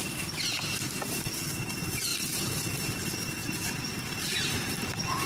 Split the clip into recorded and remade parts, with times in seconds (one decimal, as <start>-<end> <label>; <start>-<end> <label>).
0.0-5.3 recorded

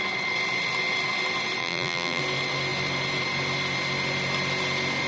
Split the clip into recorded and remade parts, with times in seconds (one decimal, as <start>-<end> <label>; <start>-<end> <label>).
0.0-1.6 recorded; 1.6-2.2 remade; 2.2-5.1 recorded